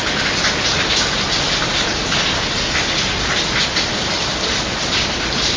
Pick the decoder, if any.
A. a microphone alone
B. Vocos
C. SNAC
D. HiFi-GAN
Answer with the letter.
A